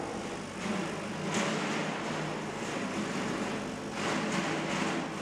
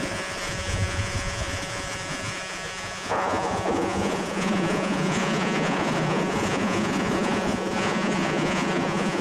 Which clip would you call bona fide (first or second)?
first